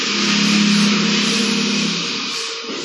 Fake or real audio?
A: real